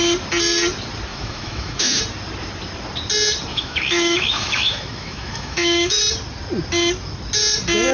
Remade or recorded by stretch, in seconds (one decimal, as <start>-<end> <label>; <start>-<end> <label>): 0.0-1.1 recorded; 1.1-2.0 remade; 2.0-3.5 recorded; 3.5-6.0 remade; 6.0-7.9 recorded